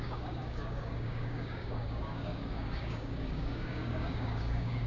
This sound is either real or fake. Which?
fake